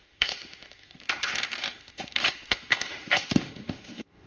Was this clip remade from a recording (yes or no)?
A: yes